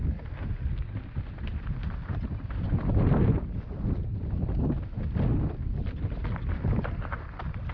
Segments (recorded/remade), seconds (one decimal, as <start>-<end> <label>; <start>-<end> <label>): 0.0-7.7 recorded